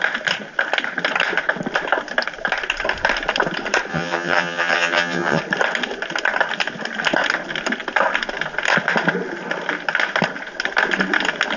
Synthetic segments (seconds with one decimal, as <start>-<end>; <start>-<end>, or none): 3.9-5.4